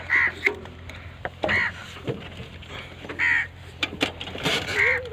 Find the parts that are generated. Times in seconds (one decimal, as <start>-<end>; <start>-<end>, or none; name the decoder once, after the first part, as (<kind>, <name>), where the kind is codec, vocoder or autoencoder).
1.8-5.1 (vocoder, BigVGAN v2)